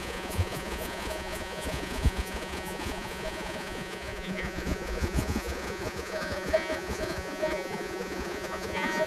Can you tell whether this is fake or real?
fake